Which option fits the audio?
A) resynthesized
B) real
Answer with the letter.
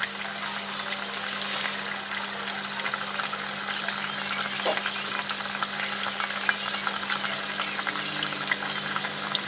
B